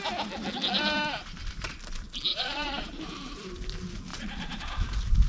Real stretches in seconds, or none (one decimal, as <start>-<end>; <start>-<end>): 0.0-2.3; 3.0-4.1; 4.8-5.3